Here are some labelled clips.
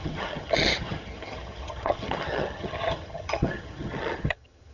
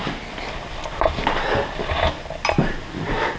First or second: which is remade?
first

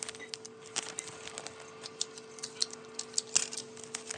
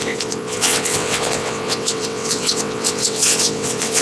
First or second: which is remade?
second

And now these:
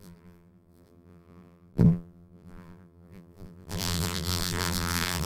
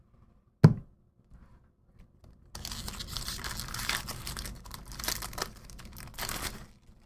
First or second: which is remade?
first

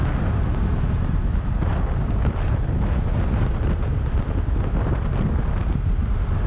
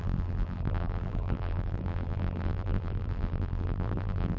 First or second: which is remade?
second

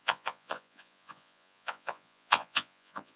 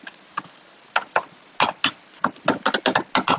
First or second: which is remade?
first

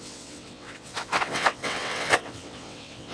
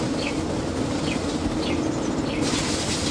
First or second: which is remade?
first